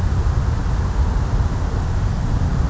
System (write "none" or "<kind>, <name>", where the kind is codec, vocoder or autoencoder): none